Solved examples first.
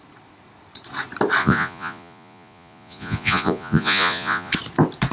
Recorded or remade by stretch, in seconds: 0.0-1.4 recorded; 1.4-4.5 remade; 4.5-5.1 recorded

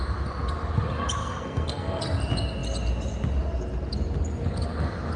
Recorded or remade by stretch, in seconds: 0.0-1.2 recorded; 1.2-2.0 remade; 2.0-5.2 recorded

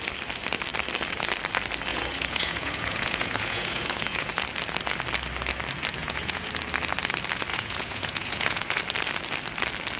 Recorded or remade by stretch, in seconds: 0.0-1.9 recorded; 1.9-4.3 remade; 4.3-6.0 recorded; 6.0-6.5 remade; 6.5-7.5 recorded; 7.5-8.8 remade; 8.8-10.0 recorded

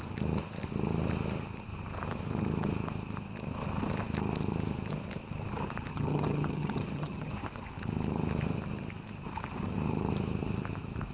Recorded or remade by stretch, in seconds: 0.0-5.9 recorded; 5.9-7.3 remade; 7.3-11.1 recorded

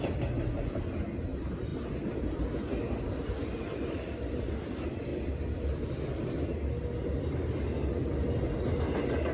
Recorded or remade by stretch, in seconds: 0.0-3.4 recorded; 3.4-4.5 remade; 4.5-5.1 recorded; 5.1-6.5 remade; 6.5-9.3 recorded

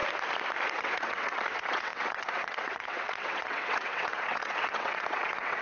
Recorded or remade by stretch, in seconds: 0.0-0.7 recorded; 0.7-5.6 remade

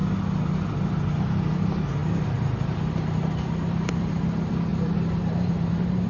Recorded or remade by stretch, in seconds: 0.0-1.4 recorded; 1.4-6.1 remade

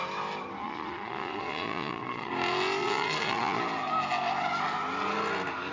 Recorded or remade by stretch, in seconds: 0.0-0.6 recorded; 0.6-2.3 remade; 2.3-2.8 recorded; 2.8-3.6 remade; 3.6-5.7 recorded